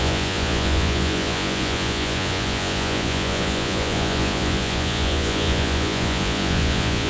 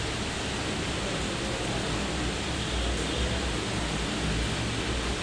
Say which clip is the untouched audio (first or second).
second